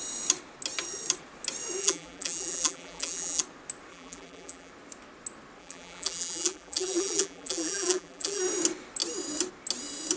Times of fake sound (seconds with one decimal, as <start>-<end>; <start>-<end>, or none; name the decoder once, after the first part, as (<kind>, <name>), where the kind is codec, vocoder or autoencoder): 1.8-3.4 (vocoder, BigVGAN v2); 3.9-4.7; 5.6-8.4